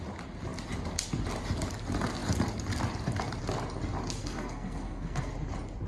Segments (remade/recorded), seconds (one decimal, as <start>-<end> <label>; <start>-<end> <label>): 0.0-4.2 recorded; 4.2-5.3 remade; 5.3-5.9 recorded